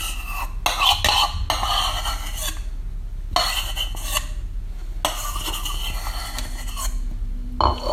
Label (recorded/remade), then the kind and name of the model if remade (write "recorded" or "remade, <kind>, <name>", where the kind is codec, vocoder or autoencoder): recorded